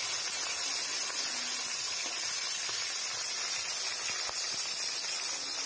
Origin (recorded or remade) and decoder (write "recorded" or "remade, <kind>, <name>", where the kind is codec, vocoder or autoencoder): recorded